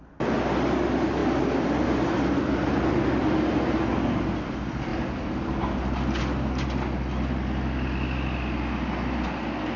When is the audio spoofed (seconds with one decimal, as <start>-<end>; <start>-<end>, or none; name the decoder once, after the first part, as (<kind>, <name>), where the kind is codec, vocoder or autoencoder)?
none